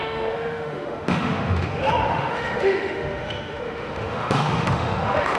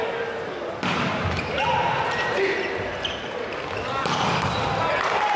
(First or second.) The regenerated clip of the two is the first